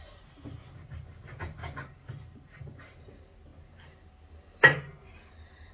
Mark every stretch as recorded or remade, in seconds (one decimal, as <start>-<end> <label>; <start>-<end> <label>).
0.0-1.6 recorded; 1.6-3.1 remade; 3.1-5.7 recorded